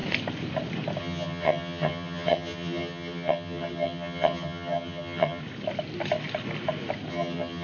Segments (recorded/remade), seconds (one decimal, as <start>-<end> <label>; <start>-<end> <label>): 0.0-1.0 recorded; 1.0-5.4 remade; 5.4-7.1 recorded; 7.1-7.6 remade